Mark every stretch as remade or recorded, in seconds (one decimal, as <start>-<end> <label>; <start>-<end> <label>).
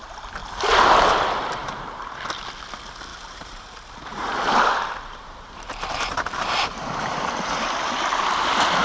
0.0-1.6 recorded; 1.6-2.2 remade; 2.2-3.1 recorded; 3.1-3.6 remade; 3.6-4.1 recorded; 4.1-7.6 remade; 7.6-8.8 recorded